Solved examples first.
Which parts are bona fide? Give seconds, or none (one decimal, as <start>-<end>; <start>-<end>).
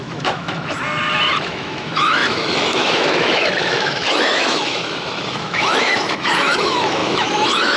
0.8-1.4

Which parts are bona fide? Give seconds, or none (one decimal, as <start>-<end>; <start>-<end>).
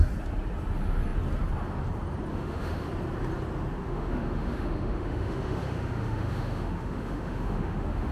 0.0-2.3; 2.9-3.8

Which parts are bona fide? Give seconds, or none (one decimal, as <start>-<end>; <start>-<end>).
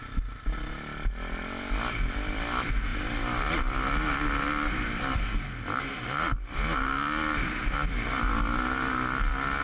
0.0-9.6